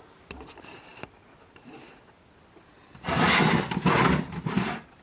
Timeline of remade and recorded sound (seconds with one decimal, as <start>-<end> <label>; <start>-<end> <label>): 0.0-5.0 recorded